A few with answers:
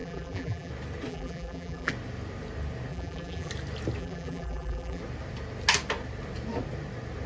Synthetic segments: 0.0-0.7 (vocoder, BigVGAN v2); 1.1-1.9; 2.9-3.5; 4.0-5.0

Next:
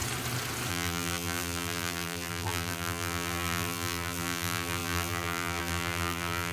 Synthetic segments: 0.7-6.5 (vocoder, BigVGAN v2)

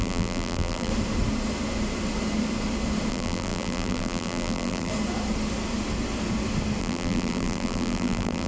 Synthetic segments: 0.0-0.9 (vocoder, BigVGAN v2); 3.1-4.9; 6.8-8.5

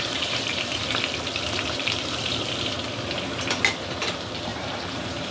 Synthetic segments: 0.0-0.8 (vocoder, BigVGAN v2); 4.0-5.3

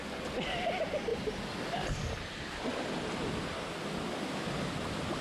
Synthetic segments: none